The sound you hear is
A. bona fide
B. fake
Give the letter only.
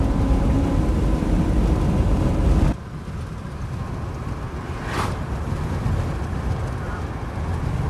A